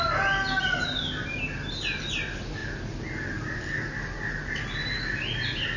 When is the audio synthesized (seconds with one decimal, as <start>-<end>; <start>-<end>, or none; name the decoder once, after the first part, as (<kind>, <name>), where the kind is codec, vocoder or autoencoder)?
none